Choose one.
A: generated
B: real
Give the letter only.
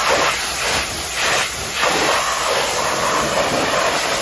A